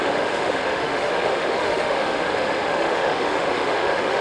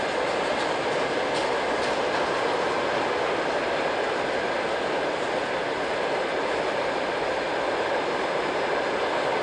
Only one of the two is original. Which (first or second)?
second